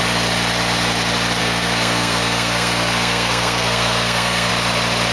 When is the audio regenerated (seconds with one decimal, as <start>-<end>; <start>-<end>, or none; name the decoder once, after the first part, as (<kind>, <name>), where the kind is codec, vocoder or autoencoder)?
1.4-4.5 (codec, SNAC)